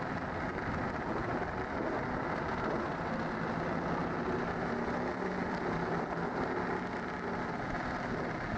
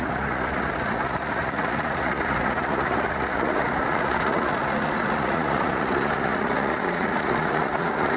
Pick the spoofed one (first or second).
second